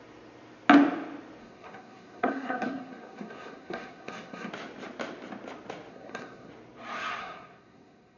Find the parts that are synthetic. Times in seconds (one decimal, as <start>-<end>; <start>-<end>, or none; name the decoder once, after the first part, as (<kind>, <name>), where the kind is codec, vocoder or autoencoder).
1.4-4.5 (codec, SNAC); 5.9-6.5; 7.2-8.2